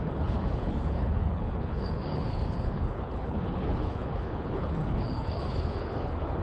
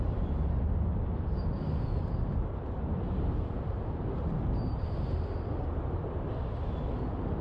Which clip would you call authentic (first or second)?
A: second